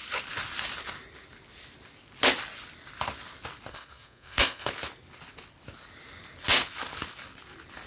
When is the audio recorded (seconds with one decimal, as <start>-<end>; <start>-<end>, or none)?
0.0-3.7; 4.7-7.9

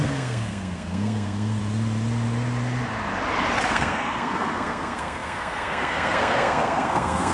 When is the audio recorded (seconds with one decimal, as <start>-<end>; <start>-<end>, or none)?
1.6-3.7

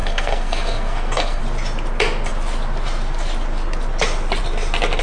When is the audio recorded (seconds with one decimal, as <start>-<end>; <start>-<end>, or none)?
1.4-5.0

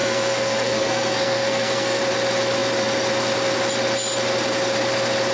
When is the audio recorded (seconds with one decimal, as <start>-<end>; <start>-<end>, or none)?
2.0-5.3

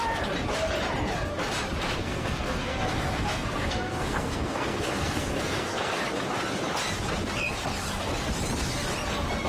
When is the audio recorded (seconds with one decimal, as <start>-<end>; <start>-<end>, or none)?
0.0-2.0; 6.0-9.5